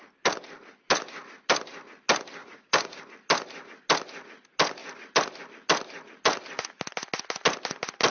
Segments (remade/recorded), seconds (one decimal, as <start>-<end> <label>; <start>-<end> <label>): 0.0-2.4 recorded; 2.4-3.0 remade; 3.0-8.1 recorded